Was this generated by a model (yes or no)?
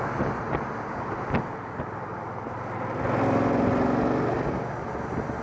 no